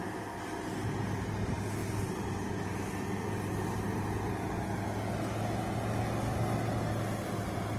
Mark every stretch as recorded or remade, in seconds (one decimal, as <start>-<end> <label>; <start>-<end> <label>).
0.0-7.8 recorded